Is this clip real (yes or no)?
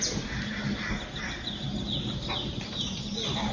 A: yes